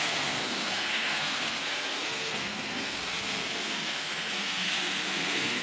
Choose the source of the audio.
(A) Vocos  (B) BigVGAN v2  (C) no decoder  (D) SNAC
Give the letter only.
D